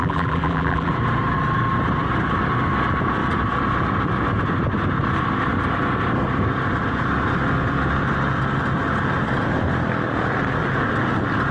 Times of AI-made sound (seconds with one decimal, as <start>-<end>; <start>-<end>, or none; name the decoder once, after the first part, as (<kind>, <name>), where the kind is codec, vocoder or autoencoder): 0.0-0.9 (vocoder, BigVGAN v2)